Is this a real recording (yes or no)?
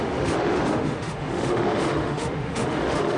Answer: no